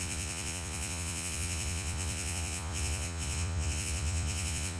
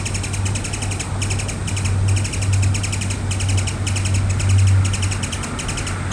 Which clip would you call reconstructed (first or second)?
first